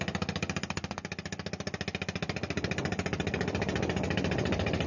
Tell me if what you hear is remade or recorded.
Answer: recorded